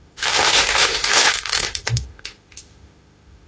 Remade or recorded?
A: remade